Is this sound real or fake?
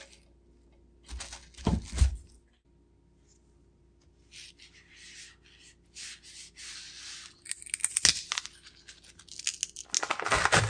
real